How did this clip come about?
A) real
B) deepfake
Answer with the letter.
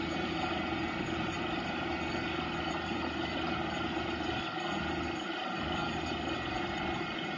A